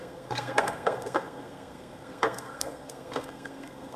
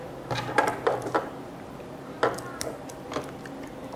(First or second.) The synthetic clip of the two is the first